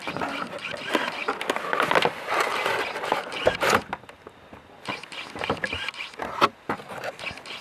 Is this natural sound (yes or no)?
yes